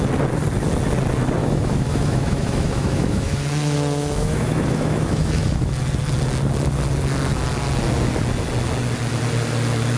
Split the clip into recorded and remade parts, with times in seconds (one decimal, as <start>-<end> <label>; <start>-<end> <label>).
0.0-1.4 recorded; 1.4-5.7 remade; 5.7-10.0 recorded